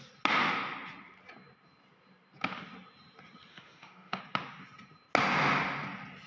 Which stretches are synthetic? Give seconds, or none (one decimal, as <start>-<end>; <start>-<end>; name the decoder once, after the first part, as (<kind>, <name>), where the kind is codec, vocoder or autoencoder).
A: 3.5-4.2 (autoencoder, DAC-VAE)